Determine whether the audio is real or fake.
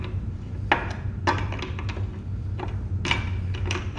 real